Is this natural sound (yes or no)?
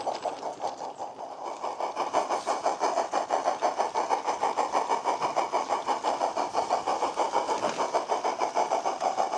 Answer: no